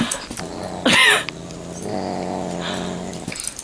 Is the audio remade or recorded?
recorded